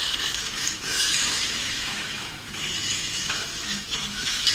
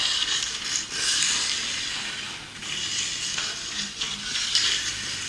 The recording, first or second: second